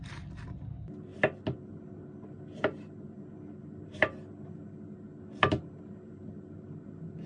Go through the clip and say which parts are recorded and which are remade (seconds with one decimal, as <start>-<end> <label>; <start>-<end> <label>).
0.0-7.3 recorded